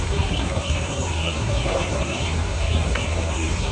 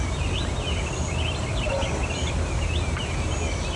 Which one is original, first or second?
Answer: second